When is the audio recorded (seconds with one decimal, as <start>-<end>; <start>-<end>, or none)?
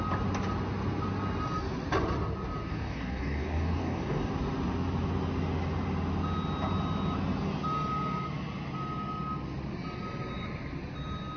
0.0-2.7; 4.3-11.4